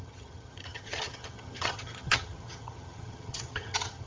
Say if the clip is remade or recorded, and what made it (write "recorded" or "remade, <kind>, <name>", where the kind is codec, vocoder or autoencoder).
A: remade, vocoder, HiFi-GAN